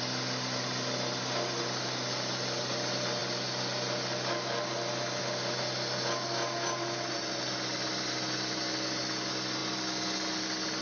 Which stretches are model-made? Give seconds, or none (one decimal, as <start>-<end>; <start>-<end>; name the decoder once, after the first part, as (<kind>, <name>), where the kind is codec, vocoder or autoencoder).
none